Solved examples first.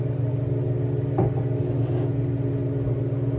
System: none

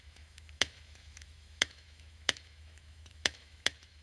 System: autoencoder, DAC-VAE